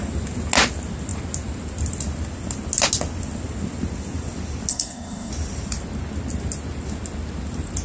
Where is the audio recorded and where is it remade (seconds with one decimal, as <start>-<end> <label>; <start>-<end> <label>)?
0.0-4.7 recorded; 4.7-5.3 remade; 5.3-7.8 recorded